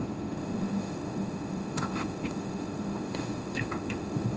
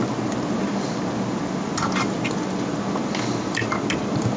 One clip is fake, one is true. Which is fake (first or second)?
first